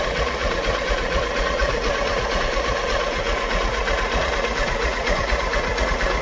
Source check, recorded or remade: remade